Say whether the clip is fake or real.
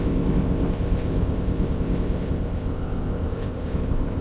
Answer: fake